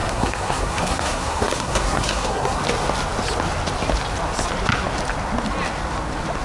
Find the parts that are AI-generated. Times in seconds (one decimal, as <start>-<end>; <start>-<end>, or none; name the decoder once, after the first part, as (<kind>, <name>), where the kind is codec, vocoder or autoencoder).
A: 0.0-2.6 (codec, SNAC)